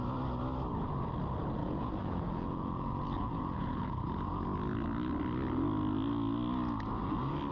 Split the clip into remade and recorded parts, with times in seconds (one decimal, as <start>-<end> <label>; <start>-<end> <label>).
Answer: 0.0-1.6 recorded; 1.6-4.0 remade; 4.0-7.5 recorded